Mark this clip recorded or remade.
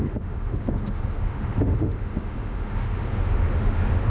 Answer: remade